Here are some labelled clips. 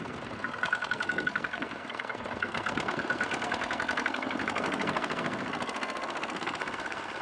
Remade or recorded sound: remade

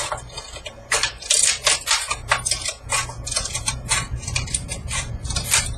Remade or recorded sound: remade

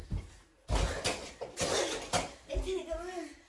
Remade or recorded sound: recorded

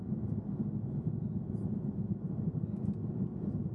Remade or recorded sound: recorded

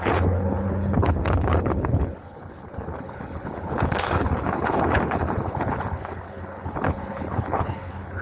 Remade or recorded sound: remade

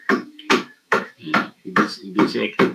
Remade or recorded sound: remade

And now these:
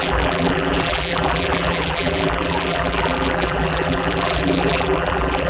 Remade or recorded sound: remade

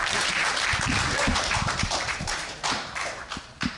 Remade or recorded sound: remade